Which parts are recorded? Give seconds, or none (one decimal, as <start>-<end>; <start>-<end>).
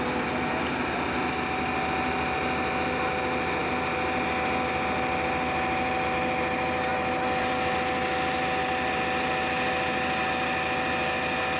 0.0-11.6